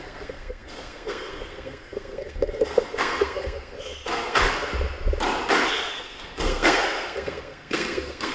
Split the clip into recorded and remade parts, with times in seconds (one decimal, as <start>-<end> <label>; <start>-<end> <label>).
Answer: 0.0-4.7 remade; 4.7-5.7 recorded; 5.7-8.3 remade